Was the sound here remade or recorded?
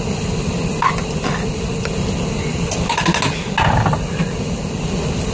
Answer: recorded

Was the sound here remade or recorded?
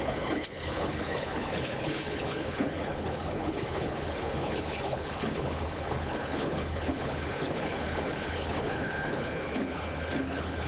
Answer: remade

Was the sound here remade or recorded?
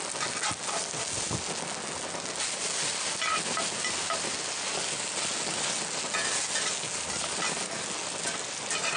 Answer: recorded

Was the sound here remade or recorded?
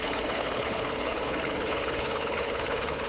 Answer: remade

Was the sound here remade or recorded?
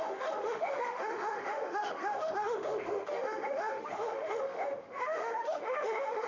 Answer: remade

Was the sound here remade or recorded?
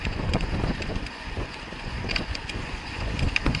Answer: remade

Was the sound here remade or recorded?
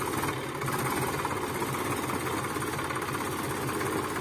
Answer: recorded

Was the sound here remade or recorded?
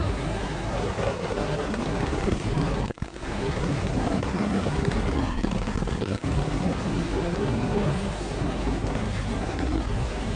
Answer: remade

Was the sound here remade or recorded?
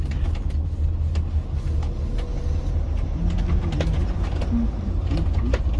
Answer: recorded